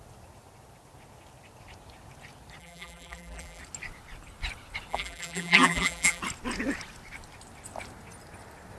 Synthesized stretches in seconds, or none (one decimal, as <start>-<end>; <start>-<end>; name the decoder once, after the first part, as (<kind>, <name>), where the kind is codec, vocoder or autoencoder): 2.6-3.6 (vocoder, BigVGAN v2); 4.9-6.2